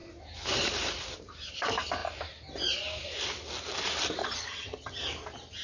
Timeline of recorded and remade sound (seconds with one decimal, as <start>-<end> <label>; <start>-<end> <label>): 0.0-4.2 recorded; 4.2-5.0 remade; 5.0-5.6 recorded